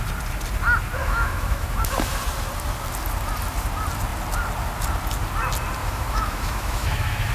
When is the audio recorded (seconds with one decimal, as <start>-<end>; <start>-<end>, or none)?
0.0-1.0; 1.9-5.8